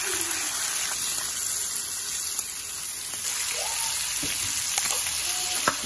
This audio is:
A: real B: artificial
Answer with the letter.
A